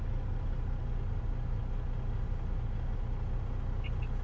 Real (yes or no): yes